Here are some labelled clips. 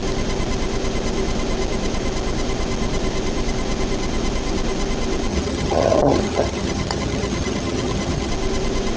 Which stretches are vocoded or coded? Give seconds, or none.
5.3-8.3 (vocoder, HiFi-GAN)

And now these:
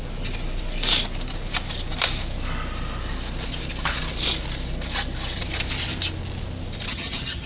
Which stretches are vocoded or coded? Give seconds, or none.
6.9-7.5 (vocoder, HiFi-GAN)